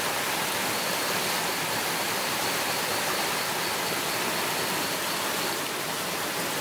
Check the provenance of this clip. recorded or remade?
recorded